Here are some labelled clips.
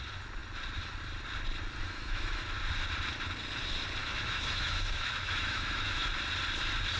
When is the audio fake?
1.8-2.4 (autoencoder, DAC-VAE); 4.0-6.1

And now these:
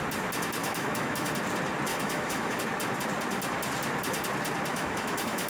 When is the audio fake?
0.6-1.3 (autoencoder, DAC-VAE); 1.9-2.6; 4.7-5.5

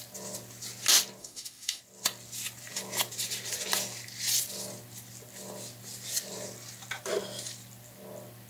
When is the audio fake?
1.2-1.8 (autoencoder, DAC-VAE)

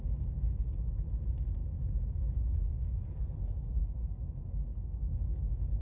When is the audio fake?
1.6-2.7 (autoencoder, DAC-VAE); 3.8-5.8